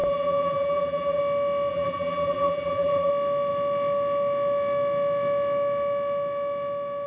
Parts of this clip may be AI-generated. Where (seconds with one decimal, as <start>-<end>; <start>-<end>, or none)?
0.0-1.2; 1.7-3.1